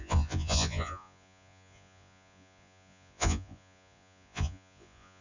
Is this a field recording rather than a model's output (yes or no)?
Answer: no